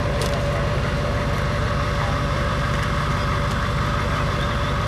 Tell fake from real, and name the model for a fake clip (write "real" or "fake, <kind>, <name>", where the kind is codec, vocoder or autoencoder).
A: real